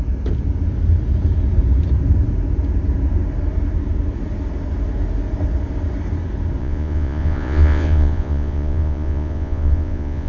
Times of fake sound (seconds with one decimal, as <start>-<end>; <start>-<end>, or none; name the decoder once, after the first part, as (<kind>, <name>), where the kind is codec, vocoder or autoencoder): 6.6-10.3 (vocoder, Vocos)